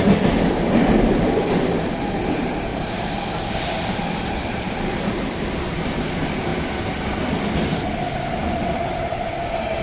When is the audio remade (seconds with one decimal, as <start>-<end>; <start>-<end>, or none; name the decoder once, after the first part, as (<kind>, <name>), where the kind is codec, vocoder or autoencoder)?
2.7-5.4 (vocoder, BigVGAN v2); 8.4-9.3